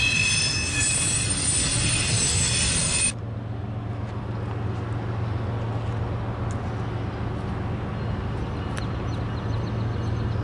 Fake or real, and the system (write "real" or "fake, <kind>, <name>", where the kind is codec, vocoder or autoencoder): real